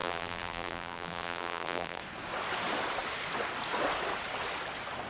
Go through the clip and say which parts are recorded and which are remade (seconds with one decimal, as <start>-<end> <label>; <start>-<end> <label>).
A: 0.0-2.0 remade; 2.0-5.1 recorded

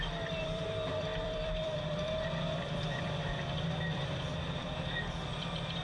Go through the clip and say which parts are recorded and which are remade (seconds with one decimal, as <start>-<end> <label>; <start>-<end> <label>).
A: 0.0-5.8 remade

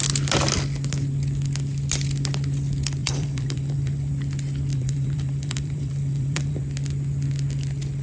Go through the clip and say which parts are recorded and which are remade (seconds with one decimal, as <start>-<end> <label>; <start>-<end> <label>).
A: 0.0-3.0 recorded; 3.0-4.1 remade; 4.1-4.7 recorded; 4.7-6.6 remade; 6.6-8.0 recorded

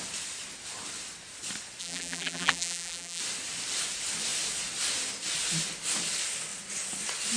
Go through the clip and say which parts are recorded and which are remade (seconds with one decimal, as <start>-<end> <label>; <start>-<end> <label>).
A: 0.0-1.8 recorded; 1.8-3.2 remade; 3.2-7.4 recorded